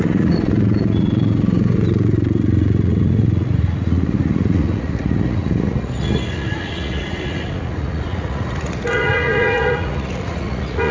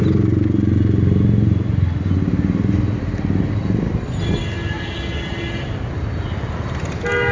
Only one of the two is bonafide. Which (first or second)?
second